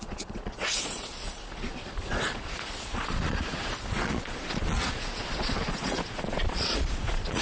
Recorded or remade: remade